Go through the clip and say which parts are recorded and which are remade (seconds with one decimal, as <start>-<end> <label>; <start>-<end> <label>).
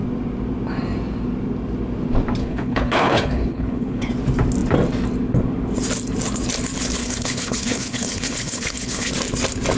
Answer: 0.0-2.4 recorded; 2.4-4.1 remade; 4.1-7.0 recorded; 7.0-9.1 remade; 9.1-9.8 recorded